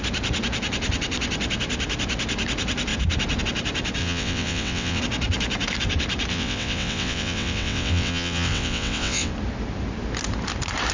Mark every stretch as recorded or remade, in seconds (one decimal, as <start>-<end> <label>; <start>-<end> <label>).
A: 0.0-4.0 recorded; 4.0-5.0 remade; 5.0-6.3 recorded; 6.3-9.3 remade; 9.3-10.9 recorded